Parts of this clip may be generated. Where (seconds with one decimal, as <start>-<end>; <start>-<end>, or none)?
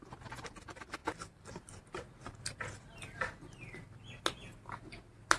none